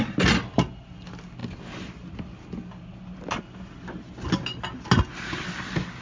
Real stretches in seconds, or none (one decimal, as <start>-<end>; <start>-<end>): 0.0-6.0

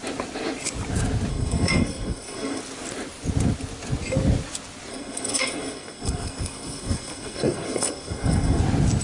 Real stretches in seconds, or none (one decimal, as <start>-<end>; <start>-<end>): 0.0-1.3; 2.6-4.9; 8.6-9.0